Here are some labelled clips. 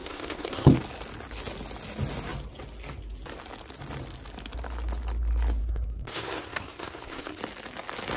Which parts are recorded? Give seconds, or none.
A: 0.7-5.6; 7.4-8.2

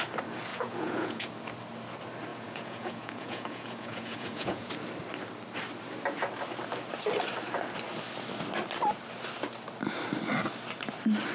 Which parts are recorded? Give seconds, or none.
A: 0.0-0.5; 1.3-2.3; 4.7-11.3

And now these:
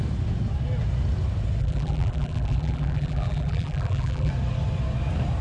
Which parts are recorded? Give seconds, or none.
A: 0.0-1.6; 4.3-5.4

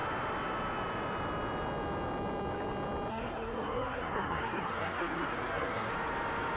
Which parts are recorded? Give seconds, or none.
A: 0.0-3.1; 5.9-6.6

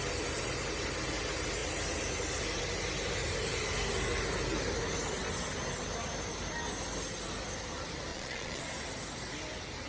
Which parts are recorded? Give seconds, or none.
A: 0.0-8.1; 8.6-9.9

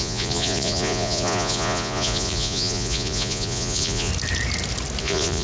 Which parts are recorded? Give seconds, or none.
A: 4.1-5.0